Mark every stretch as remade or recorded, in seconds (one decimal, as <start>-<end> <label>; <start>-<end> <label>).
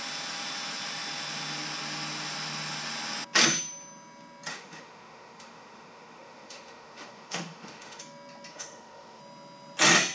0.0-4.5 recorded; 4.5-8.0 remade; 8.0-8.5 recorded; 8.5-9.2 remade; 9.2-10.1 recorded